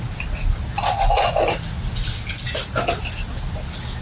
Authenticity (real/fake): real